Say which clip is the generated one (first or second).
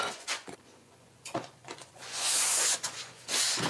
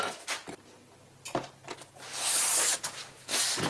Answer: first